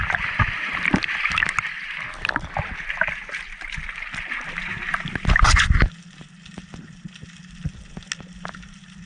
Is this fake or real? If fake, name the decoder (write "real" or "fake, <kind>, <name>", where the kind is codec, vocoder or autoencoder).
real